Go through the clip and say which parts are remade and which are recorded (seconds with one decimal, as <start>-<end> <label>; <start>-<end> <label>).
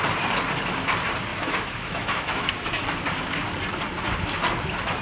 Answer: 0.0-1.3 recorded; 1.3-2.7 remade; 2.7-5.0 recorded